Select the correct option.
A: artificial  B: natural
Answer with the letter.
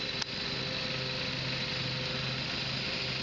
B